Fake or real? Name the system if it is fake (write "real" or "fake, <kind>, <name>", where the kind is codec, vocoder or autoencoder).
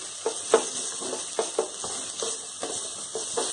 real